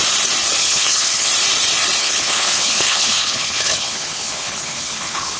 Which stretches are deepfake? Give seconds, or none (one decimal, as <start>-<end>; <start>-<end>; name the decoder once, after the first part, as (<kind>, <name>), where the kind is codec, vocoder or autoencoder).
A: 0.6-1.3 (codec, HILCodec); 2.0-5.4

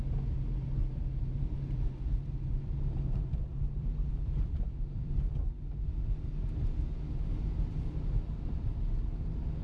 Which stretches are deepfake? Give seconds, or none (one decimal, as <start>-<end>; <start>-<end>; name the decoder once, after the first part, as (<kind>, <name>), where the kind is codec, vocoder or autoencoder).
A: 1.3-5.2 (vocoder, BigVGAN v2)